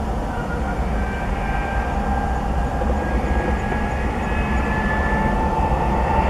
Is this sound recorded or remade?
recorded